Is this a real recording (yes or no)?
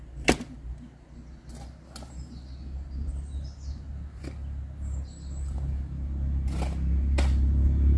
yes